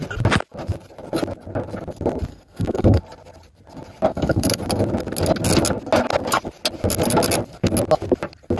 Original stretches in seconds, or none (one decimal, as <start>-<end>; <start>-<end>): 0.0-2.3; 3.0-4.1; 4.6-8.6